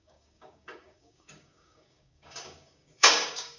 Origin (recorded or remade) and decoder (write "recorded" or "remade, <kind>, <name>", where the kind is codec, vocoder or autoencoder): remade, codec, DAC